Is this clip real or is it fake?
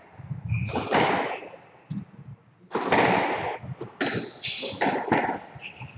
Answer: real